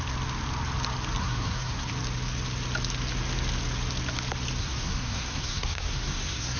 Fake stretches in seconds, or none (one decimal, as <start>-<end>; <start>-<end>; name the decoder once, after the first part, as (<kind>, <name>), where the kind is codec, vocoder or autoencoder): 1.2-1.9 (codec, SNAC); 4.6-6.6